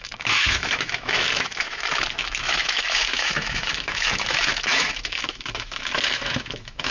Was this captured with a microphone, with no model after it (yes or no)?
no